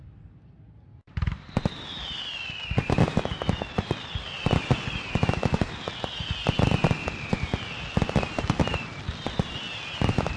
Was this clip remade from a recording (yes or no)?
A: yes